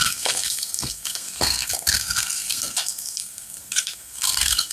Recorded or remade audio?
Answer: remade